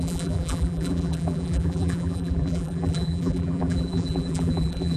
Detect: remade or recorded remade